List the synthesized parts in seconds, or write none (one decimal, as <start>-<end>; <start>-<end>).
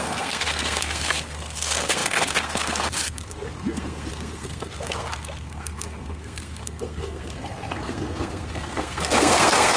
0.0-9.8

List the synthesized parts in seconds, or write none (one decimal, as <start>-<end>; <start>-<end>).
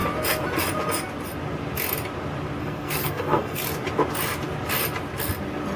2.6-3.6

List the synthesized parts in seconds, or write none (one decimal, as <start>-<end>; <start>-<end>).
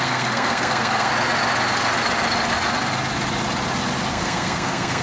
0.0-1.1; 4.1-5.0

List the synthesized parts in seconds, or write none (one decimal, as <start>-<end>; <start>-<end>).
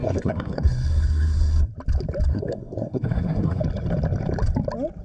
0.0-1.7; 2.3-3.6